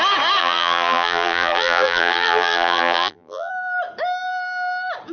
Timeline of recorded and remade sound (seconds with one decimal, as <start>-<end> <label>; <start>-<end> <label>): 0.0-0.4 recorded; 0.4-3.5 remade; 3.5-5.1 recorded